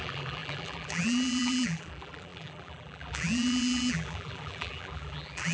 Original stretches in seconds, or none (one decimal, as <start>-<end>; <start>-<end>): none